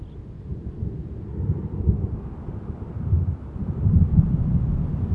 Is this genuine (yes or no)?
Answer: yes